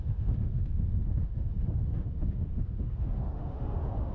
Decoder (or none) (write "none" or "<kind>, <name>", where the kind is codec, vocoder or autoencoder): autoencoder, DAC-VAE